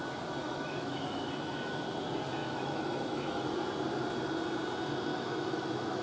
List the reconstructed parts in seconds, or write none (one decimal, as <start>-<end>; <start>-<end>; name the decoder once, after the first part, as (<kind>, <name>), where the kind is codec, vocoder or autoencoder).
0.4-1.3 (autoencoder, DAC-VAE); 2.4-3.4; 5.1-6.0